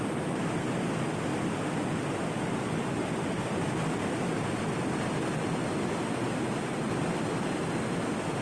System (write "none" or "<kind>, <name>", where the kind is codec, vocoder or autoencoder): none